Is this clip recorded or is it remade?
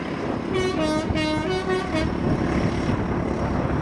recorded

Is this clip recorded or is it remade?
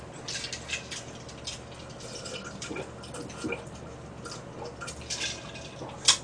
recorded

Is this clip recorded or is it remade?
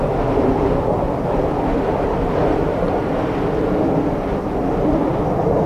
recorded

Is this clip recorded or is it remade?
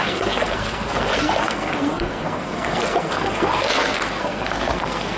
remade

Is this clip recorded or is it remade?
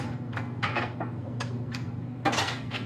remade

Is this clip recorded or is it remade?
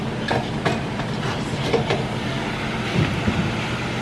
recorded